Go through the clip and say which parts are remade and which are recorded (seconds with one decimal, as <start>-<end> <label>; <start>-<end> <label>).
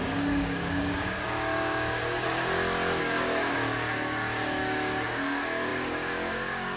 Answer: 0.0-2.0 remade; 2.0-3.0 recorded; 3.0-6.8 remade